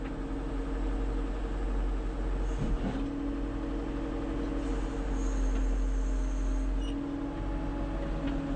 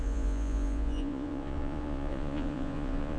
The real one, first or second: first